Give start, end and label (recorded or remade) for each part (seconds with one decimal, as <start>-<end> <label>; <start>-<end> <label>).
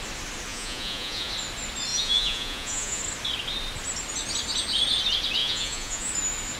0.0-0.5 recorded; 0.5-1.3 remade; 1.3-1.9 recorded; 1.9-3.0 remade; 3.0-5.4 recorded; 5.4-6.1 remade; 6.1-6.6 recorded